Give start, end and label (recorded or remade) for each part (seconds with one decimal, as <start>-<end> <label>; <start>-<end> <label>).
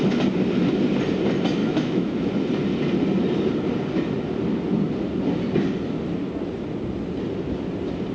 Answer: 0.0-1.6 recorded; 1.6-2.3 remade; 2.3-8.1 recorded